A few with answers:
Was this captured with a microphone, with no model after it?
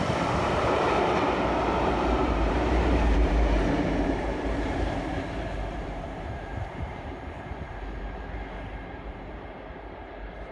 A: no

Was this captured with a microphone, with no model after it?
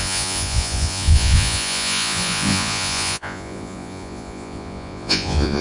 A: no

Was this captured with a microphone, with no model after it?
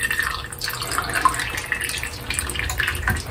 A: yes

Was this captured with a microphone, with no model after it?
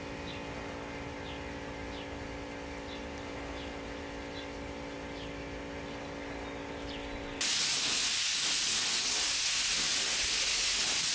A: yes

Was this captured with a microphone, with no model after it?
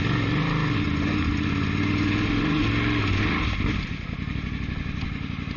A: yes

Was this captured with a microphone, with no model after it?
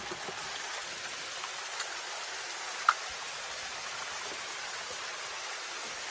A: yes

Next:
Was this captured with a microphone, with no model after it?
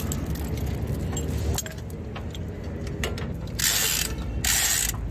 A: yes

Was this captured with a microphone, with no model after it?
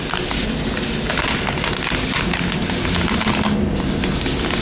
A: yes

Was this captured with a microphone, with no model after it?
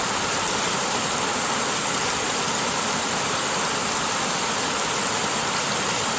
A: yes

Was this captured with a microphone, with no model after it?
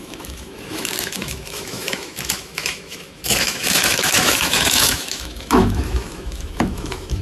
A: no